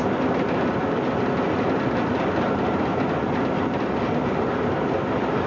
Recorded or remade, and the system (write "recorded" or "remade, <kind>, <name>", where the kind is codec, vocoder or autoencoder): recorded